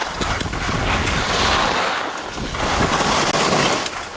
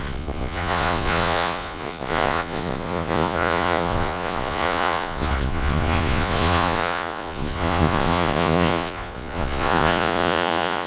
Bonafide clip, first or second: first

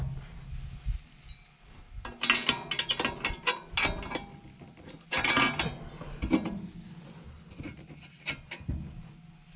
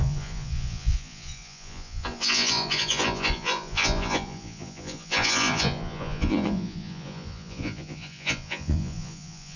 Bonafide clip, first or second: first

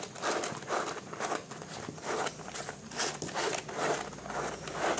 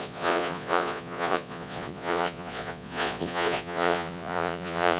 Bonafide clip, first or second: first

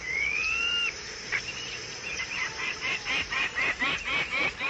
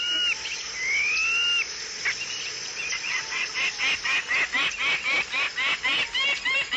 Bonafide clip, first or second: second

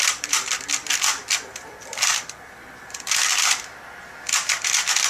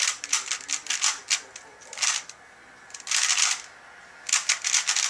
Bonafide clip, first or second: second